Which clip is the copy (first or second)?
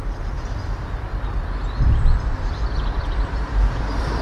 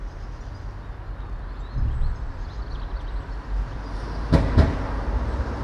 first